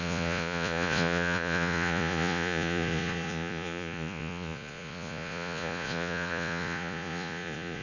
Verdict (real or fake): fake